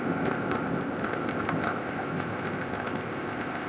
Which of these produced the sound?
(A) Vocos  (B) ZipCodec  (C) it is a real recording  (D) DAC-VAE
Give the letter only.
B